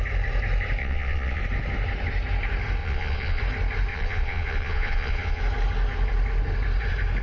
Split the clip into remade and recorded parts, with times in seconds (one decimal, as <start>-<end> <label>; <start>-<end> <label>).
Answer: 0.0-0.8 recorded; 0.8-1.4 remade; 1.4-2.8 recorded; 2.8-3.4 remade; 3.4-3.9 recorded; 3.9-5.4 remade; 5.4-7.2 recorded